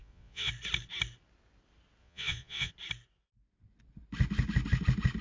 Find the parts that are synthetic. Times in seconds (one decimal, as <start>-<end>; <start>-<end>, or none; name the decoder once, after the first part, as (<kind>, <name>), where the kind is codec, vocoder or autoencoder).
0.0-0.5 (vocoder, Vocos); 2.0-2.7